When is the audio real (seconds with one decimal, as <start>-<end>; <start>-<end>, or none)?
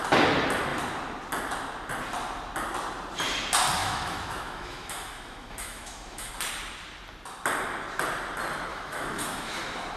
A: 0.0-3.8; 6.3-8.7; 9.6-10.0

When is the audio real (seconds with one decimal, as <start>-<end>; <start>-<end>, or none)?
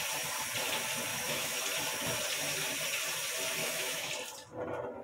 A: 0.0-1.1; 1.6-3.6; 4.1-5.0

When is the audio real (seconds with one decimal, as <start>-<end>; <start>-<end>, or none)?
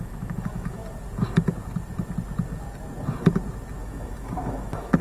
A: 0.8-3.8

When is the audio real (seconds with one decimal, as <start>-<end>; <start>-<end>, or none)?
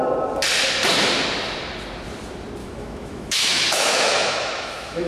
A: 0.0-2.6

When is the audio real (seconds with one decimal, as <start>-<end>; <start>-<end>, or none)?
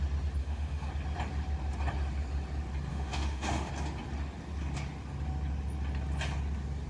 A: 0.0-0.4; 0.9-2.9; 3.7-6.9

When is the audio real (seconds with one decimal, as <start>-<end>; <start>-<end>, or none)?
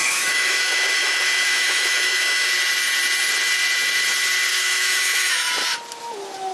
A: 2.5-4.5; 5.5-6.5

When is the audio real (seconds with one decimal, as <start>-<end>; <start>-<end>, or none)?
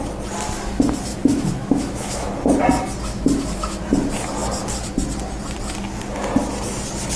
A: 0.0-1.1; 2.3-3.1; 3.8-7.2